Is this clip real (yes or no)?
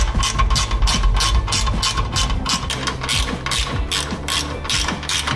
yes